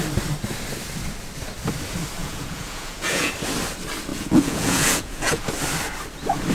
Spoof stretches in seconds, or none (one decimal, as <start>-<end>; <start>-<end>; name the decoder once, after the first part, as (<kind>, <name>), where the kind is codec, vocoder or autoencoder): 2.2-3.3 (vocoder, Vocos); 4.1-5.4